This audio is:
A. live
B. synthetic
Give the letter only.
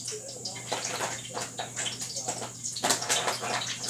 A